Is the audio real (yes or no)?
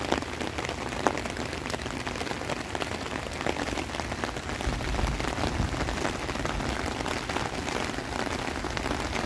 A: yes